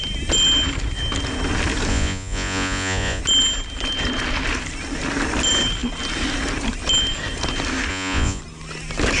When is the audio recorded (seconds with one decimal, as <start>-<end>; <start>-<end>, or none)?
0.0-1.9; 3.2-7.9; 8.4-9.2